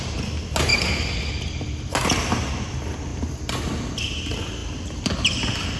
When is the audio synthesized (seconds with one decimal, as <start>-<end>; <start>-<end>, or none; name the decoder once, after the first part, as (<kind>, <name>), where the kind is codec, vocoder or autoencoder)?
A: 4.6-5.8 (vocoder, BigVGAN v2)